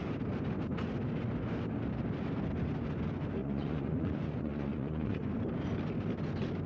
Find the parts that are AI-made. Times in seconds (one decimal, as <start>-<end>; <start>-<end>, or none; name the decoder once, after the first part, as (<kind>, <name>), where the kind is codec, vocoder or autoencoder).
3.4-5.3 (vocoder, Vocos)

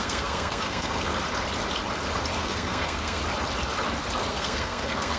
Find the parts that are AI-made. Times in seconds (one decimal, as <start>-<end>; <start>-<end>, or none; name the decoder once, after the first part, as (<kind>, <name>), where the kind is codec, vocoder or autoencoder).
0.0-1.1 (codec, SNAC); 2.4-3.2; 4.3-5.2

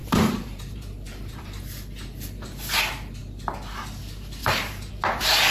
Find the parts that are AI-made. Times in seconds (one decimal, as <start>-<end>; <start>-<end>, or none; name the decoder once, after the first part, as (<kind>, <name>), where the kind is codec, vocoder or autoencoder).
0.0-1.6 (vocoder, BigVGAN v2); 4.4-4.9

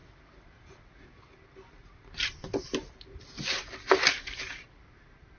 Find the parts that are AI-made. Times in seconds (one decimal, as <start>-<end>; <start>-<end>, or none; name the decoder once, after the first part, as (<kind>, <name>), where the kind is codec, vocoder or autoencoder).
none

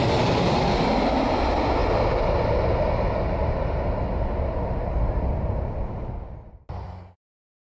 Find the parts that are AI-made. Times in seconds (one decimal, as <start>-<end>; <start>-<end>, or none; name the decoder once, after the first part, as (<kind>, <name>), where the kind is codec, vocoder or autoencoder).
none

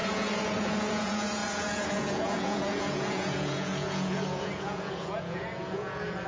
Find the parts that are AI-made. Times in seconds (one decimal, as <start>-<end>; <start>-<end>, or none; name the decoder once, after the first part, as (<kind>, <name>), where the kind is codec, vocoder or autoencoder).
0.0-6.3 (vocoder, Vocos)

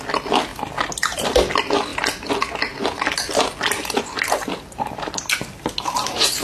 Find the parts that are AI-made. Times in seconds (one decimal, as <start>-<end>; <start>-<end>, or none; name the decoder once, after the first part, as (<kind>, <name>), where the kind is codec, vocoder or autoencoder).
none

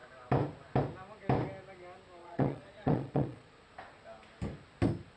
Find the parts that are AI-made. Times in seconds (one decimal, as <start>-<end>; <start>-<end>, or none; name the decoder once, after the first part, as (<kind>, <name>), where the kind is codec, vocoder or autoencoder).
2.2-3.6 (vocoder, Vocos)